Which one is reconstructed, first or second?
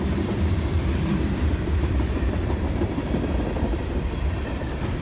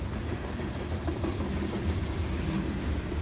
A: first